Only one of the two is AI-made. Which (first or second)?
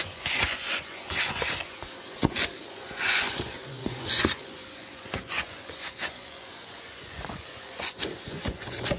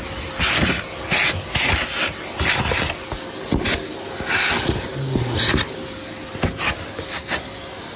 first